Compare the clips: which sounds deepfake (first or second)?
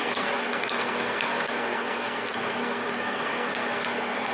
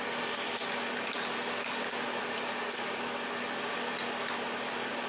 first